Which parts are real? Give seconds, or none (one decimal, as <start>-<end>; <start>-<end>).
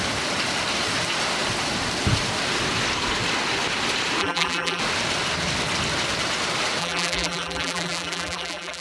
0.0-4.2; 4.8-6.8